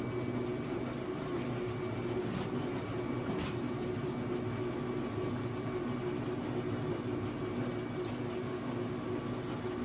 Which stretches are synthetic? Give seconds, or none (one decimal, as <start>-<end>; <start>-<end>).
none